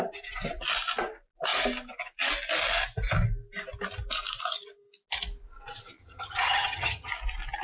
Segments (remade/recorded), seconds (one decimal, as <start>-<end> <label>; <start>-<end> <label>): 0.0-6.0 recorded; 6.0-7.1 remade; 7.1-7.6 recorded

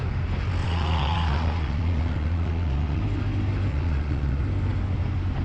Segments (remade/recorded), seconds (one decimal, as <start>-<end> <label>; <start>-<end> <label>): 0.0-0.6 recorded; 0.6-3.0 remade; 3.0-3.7 recorded; 3.7-4.4 remade; 4.4-5.4 recorded